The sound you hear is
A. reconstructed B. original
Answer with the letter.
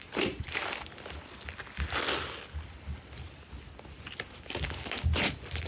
B